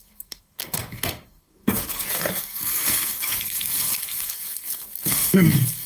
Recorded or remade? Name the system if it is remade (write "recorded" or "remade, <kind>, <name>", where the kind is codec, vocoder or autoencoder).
remade, codec, SNAC